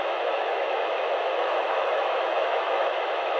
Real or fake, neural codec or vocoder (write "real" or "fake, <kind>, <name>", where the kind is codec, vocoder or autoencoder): fake, autoencoder, DAC-VAE